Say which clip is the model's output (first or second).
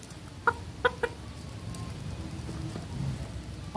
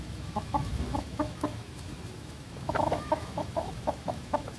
second